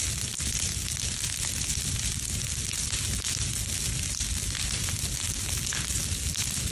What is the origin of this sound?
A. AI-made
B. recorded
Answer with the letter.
B